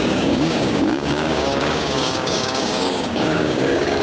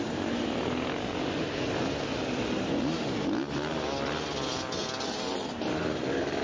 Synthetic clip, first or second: first